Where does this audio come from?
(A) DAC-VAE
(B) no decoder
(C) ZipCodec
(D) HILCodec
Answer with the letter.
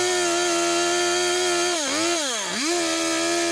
B